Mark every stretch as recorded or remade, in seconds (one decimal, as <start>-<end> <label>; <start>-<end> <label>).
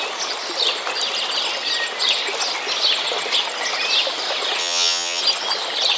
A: 0.0-4.6 recorded; 4.6-5.2 remade; 5.2-6.0 recorded